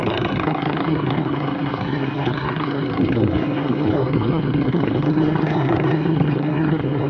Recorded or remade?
remade